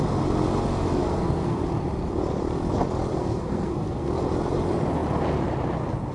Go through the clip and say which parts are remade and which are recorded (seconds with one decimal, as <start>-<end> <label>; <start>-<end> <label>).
0.0-1.0 recorded; 1.0-1.6 remade; 1.6-3.1 recorded; 3.1-4.1 remade; 4.1-6.1 recorded